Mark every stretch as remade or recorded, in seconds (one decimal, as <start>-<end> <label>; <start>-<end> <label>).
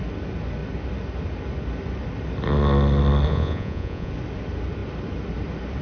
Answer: 0.0-3.3 recorded; 3.3-4.1 remade; 4.1-5.8 recorded